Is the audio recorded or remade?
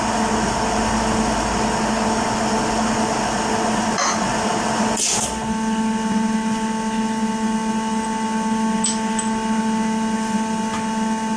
recorded